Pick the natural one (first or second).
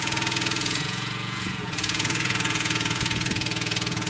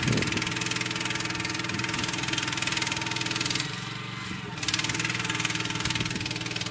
second